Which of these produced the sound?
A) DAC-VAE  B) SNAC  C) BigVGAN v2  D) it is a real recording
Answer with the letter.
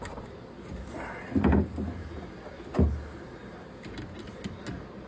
D